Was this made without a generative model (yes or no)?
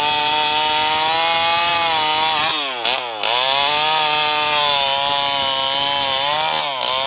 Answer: yes